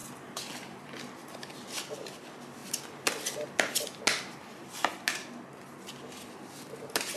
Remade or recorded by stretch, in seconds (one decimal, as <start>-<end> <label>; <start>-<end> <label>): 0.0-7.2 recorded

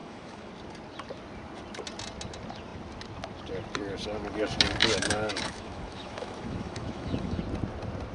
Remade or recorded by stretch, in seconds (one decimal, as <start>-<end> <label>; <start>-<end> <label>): 0.0-0.5 remade; 0.5-4.8 recorded; 4.8-7.4 remade; 7.4-8.1 recorded

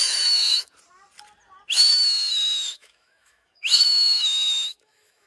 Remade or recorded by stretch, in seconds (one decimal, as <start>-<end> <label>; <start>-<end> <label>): 0.0-0.7 remade; 0.7-1.9 recorded; 1.9-5.3 remade

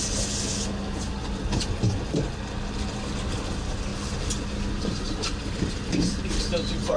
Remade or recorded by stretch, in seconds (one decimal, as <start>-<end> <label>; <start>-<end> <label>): 0.0-7.0 recorded